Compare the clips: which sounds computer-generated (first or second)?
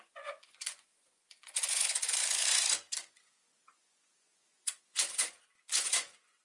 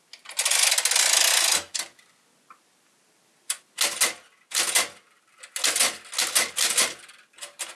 first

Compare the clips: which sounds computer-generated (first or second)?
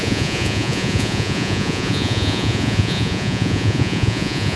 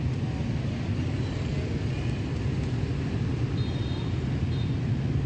first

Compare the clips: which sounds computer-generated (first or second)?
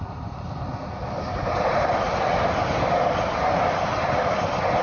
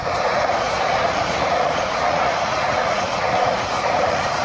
second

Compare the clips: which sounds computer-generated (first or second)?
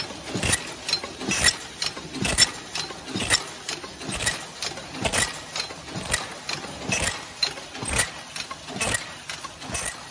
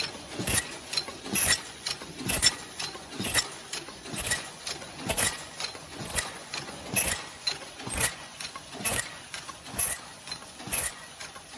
second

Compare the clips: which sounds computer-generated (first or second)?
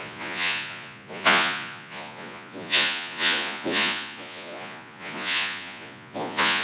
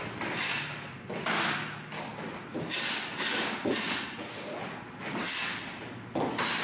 first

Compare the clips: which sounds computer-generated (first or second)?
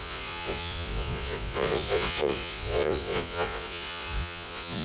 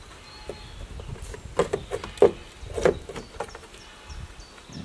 first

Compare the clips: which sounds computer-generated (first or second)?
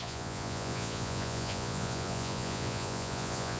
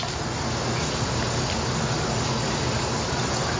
first